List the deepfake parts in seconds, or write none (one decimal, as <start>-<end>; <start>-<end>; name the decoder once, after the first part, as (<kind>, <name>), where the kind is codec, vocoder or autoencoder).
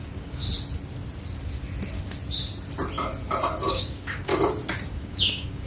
0.0-0.4 (codec, DAC); 3.7-4.3; 4.9-5.7